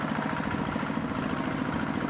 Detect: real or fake real